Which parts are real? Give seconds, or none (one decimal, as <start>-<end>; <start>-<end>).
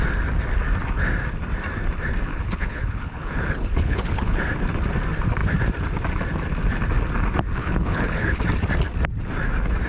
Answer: 0.0-2.3; 4.4-7.6; 8.4-9.9